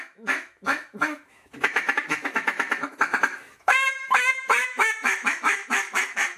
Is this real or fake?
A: fake